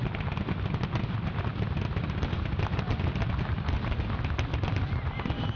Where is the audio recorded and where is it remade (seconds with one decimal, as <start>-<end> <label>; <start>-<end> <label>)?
0.0-5.6 recorded